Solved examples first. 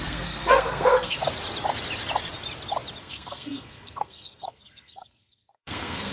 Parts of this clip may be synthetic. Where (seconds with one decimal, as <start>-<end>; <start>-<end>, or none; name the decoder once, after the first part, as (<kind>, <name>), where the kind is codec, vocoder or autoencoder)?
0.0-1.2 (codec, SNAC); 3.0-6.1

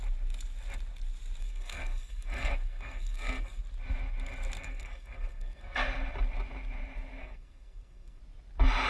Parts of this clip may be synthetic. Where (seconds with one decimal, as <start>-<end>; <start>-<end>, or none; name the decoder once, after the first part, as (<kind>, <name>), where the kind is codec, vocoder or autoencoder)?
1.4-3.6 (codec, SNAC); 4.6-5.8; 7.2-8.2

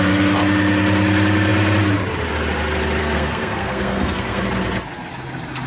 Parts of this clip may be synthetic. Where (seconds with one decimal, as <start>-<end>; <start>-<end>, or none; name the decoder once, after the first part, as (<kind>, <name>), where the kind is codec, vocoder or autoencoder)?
3.0-4.4 (codec, SNAC)

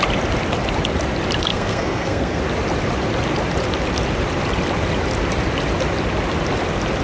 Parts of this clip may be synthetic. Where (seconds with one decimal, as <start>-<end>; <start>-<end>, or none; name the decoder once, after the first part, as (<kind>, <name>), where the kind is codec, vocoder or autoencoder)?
1.5-2.4 (codec, SNAC)